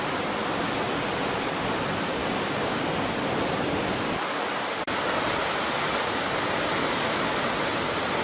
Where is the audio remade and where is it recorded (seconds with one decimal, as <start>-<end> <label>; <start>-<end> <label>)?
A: 0.0-2.2 recorded; 2.2-2.9 remade; 2.9-8.2 recorded

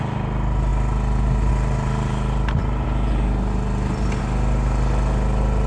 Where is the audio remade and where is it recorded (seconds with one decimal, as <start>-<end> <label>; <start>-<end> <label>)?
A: 0.0-5.7 recorded

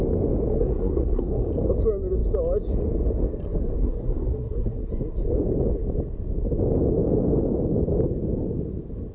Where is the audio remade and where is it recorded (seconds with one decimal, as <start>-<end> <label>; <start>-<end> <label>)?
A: 0.0-0.5 recorded; 0.5-1.5 remade; 1.5-3.8 recorded; 3.8-4.9 remade; 4.9-9.1 recorded

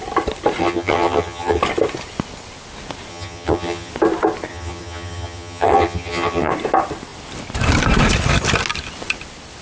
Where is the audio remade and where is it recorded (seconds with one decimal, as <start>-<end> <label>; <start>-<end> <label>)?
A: 0.0-0.6 recorded; 0.6-1.6 remade; 1.6-3.1 recorded; 3.1-3.9 remade; 3.9-4.5 recorded; 4.5-6.5 remade; 6.5-9.6 recorded

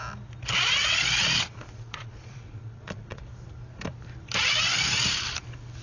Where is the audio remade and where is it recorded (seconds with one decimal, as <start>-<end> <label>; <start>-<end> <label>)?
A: 0.0-1.4 recorded; 1.4-3.2 remade; 3.2-5.8 recorded

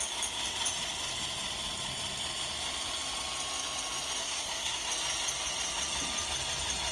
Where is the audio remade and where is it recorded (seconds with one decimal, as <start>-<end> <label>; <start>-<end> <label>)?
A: 0.0-4.2 recorded; 4.2-4.9 remade; 4.9-6.9 recorded

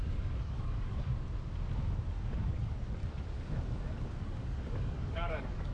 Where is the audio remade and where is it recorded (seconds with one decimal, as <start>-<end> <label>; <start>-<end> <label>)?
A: 0.0-1.1 remade; 1.1-2.0 recorded; 2.0-3.0 remade; 3.0-4.2 recorded; 4.2-5.7 remade

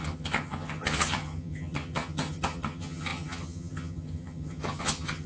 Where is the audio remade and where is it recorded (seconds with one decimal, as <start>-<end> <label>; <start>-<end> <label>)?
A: 0.0-5.3 remade